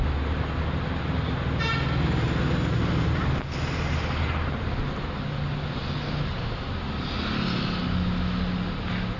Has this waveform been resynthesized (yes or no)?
no